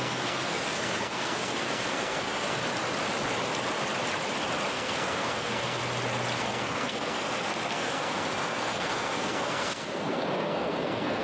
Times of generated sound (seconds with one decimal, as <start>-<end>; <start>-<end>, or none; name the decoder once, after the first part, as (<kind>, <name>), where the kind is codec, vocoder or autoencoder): 0.0-2.6 (codec, SNAC); 4.7-5.8; 6.4-11.2